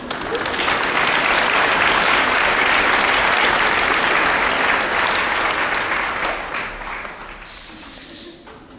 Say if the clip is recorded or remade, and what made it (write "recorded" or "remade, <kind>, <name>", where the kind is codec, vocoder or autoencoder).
recorded